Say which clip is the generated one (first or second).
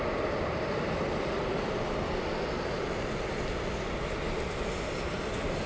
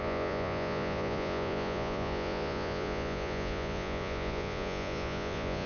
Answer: second